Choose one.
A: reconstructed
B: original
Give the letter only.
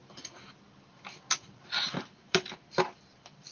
B